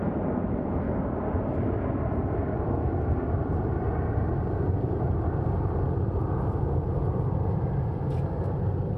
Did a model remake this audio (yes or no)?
no